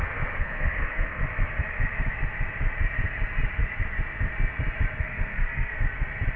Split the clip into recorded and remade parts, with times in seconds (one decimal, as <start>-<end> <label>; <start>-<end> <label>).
0.0-1.2 remade; 1.2-5.0 recorded; 5.0-5.7 remade; 5.7-6.4 recorded